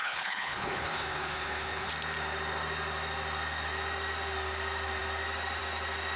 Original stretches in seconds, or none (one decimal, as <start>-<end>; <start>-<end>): 1.9-6.2